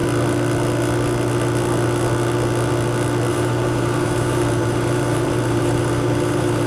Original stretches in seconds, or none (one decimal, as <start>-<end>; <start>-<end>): 0.0-3.3